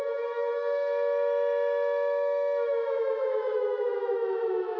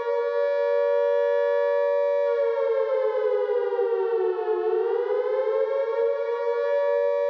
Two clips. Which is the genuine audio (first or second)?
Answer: second